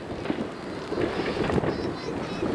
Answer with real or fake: real